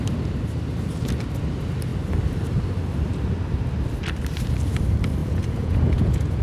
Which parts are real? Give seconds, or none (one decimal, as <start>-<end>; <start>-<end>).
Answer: 0.0-5.2